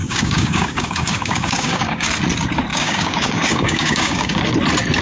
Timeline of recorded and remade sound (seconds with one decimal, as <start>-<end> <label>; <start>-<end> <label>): 0.0-2.1 remade; 2.1-2.7 recorded; 2.7-4.4 remade; 4.4-5.0 recorded